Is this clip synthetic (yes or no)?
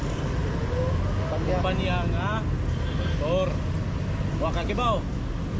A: no